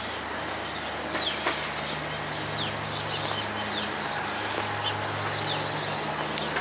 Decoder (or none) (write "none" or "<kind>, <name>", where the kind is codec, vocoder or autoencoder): none